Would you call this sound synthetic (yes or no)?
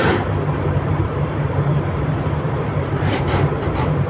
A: yes